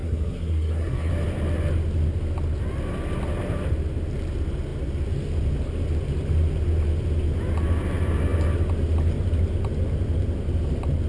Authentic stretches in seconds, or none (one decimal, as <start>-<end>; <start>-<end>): 1.1-11.1

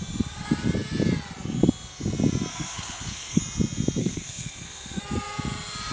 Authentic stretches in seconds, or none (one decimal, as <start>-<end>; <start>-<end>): 0.0-2.5; 3.4-4.0; 5.0-5.9

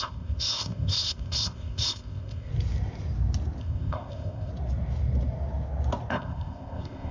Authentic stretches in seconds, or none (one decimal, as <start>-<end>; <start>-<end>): 2.5-3.6; 4.5-6.1